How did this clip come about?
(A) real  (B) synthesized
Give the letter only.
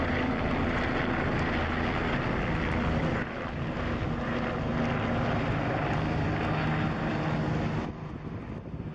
A